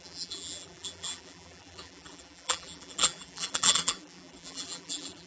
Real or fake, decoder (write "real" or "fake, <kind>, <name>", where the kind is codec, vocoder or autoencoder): fake, vocoder, BigVGAN v2